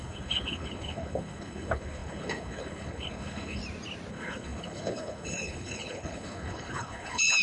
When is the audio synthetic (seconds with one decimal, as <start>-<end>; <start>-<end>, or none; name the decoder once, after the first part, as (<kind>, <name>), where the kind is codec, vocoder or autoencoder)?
0.0-3.6 (codec, HILCodec); 4.1-7.4